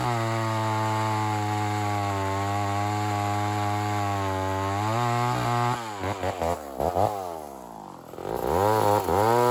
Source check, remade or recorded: recorded